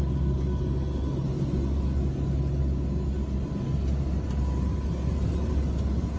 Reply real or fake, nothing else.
real